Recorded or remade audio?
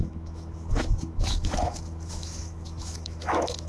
remade